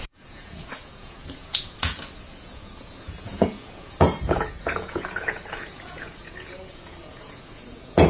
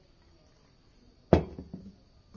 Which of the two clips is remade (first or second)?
first